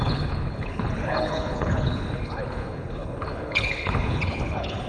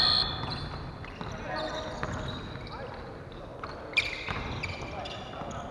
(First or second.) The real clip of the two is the second